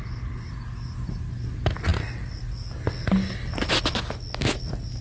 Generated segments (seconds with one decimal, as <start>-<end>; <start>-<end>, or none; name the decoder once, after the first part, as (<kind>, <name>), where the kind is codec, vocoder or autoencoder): none